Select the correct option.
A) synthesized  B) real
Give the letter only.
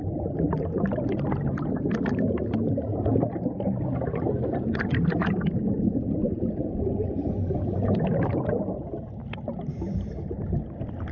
B